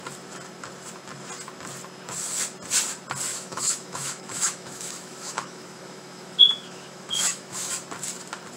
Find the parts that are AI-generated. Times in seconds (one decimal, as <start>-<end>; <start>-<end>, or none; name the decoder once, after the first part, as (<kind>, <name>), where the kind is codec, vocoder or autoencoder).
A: 3.3-7.7 (autoencoder, DAC-VAE)